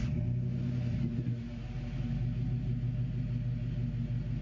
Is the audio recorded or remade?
recorded